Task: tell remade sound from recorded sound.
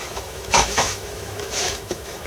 remade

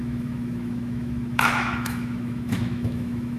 remade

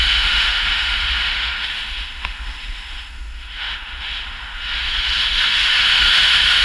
remade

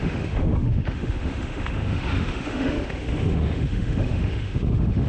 remade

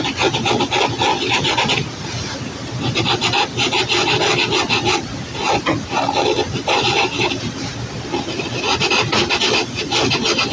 recorded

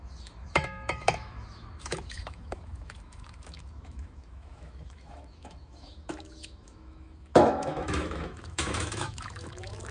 remade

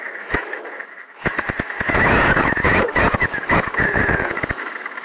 remade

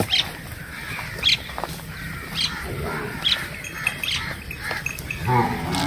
recorded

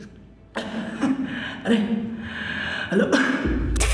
recorded